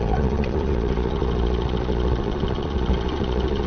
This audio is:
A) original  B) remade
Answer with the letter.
B